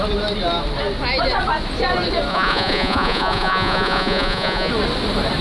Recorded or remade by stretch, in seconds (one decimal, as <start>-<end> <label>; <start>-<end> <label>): 0.0-2.3 recorded; 2.3-4.7 remade; 4.7-5.4 recorded